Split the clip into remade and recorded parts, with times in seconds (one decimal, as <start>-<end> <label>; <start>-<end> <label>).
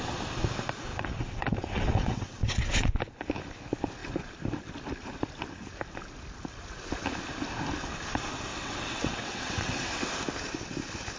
0.0-0.9 recorded; 0.9-3.0 remade; 3.0-8.5 recorded; 8.5-10.1 remade; 10.1-11.2 recorded